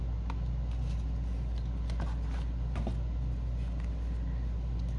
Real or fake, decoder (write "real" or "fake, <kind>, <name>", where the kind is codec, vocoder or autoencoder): real